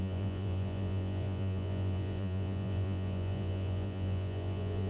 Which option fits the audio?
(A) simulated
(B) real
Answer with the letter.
A